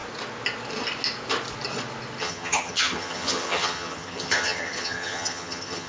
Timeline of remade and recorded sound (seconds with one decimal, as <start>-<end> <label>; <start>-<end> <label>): 0.0-2.2 recorded; 2.2-5.9 remade